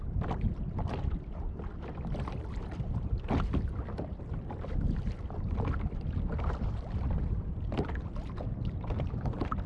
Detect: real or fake fake